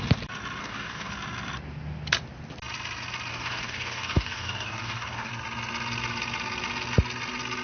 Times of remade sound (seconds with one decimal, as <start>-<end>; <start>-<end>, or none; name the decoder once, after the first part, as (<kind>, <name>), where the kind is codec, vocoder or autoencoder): 0.6-1.1 (codec, DAC); 3.3-5.3

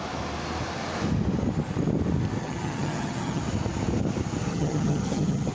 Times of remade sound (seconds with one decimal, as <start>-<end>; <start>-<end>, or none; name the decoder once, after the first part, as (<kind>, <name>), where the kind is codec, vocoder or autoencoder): 2.4-3.4 (vocoder, HiFi-GAN); 4.5-5.5

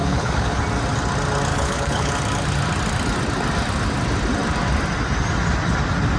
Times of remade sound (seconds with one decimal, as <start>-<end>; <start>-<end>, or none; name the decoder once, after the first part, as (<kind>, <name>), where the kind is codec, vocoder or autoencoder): 0.0-0.6 (codec, HILCodec); 1.5-2.1

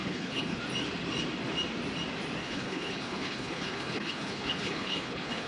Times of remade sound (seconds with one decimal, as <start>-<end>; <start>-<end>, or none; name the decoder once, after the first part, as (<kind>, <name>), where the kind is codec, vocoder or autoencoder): 0.0-0.6 (codec, HILCodec); 2.4-5.5